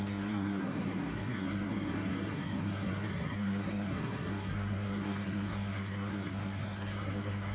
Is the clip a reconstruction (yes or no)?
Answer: yes